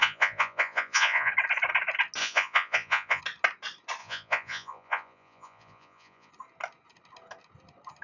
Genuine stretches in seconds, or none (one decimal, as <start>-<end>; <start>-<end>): 1.3-2.2; 3.2-4.0; 6.3-8.0